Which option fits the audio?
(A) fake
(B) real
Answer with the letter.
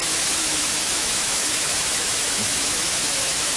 A